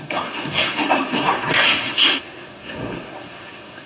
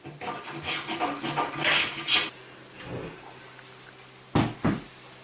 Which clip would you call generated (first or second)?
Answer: first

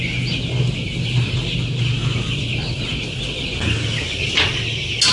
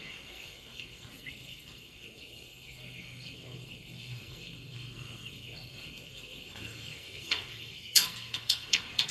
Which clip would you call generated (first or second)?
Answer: second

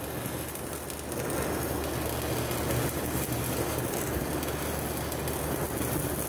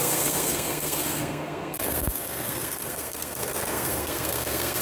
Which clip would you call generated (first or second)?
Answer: second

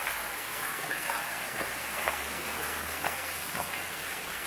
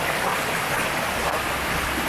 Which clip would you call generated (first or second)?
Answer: first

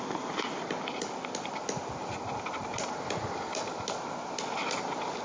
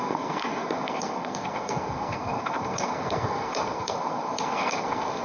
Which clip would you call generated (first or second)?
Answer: second